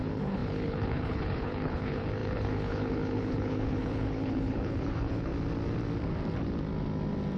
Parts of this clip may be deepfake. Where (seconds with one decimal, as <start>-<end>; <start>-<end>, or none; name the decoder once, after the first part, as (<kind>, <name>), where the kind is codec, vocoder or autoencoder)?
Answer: 0.0-5.3 (codec, HILCodec)

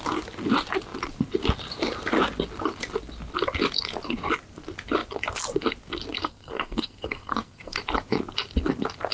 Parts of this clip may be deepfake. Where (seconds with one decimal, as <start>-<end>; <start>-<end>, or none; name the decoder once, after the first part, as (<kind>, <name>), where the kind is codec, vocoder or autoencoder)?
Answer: 6.2-7.8 (codec, SNAC)

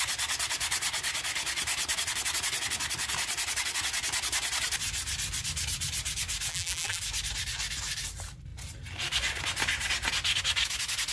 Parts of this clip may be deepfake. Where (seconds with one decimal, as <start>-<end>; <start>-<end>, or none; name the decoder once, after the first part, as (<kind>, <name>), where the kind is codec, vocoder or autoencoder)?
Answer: 6.5-7.0 (vocoder, BigVGAN v2)

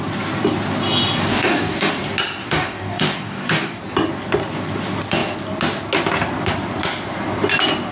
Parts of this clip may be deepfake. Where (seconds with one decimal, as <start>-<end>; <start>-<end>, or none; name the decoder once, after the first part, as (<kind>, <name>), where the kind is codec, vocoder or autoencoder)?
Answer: 1.3-1.9 (codec, DAC); 2.4-3.8

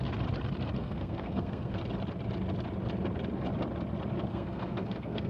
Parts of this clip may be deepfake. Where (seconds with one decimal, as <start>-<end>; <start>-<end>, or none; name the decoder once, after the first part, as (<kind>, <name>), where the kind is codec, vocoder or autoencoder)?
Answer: 0.8-1.8 (codec, SNAC); 4.3-5.3

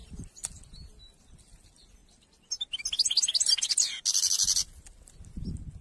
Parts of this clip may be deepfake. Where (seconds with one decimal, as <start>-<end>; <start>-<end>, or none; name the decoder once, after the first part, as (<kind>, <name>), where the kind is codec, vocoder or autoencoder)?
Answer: 0.0-0.7 (vocoder, BigVGAN v2)